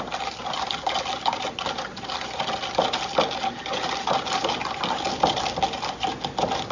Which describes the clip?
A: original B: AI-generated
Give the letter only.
A